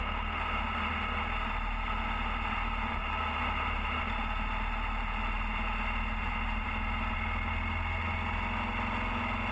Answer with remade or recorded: recorded